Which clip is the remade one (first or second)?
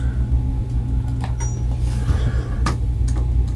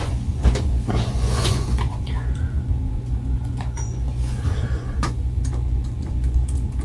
second